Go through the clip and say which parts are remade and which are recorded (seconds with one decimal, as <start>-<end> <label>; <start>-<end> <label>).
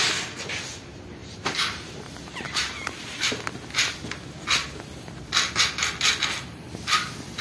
0.0-1.2 recorded; 1.2-3.3 remade; 3.3-7.4 recorded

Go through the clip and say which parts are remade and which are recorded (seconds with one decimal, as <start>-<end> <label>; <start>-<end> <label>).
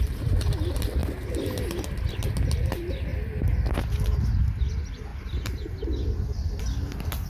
0.0-7.3 recorded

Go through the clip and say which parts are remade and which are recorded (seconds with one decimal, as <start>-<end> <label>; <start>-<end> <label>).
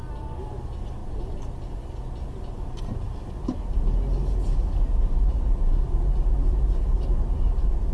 0.0-1.0 recorded; 1.0-2.0 remade; 2.0-7.9 recorded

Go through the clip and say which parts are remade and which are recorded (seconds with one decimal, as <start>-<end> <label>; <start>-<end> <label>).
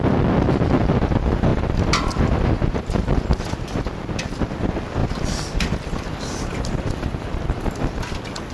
0.0-5.0 recorded; 5.0-6.2 remade; 6.2-8.5 recorded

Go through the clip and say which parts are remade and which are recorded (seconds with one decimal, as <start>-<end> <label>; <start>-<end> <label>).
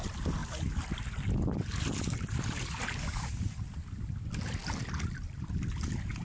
0.0-6.2 recorded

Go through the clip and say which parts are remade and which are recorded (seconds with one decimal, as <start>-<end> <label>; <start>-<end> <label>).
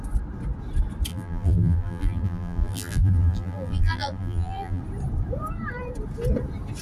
0.0-1.1 recorded; 1.1-4.8 remade; 4.8-6.8 recorded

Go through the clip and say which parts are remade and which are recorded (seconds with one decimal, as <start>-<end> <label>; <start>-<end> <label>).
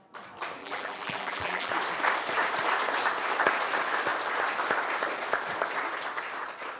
0.0-0.6 recorded; 0.6-1.7 remade; 1.7-6.8 recorded